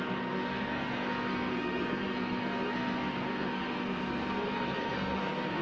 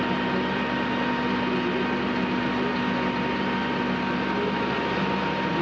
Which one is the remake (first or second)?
first